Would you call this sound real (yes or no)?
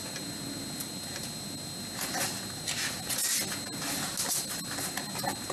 yes